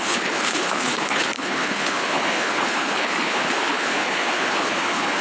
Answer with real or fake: fake